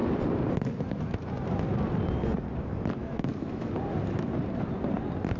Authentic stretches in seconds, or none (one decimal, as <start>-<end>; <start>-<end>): 0.0-3.0; 3.7-5.4